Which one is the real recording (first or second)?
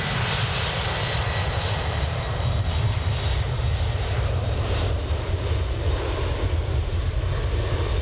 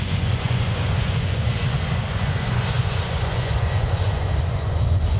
first